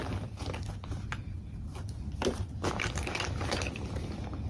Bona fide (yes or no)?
yes